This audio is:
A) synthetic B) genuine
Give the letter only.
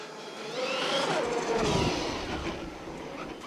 B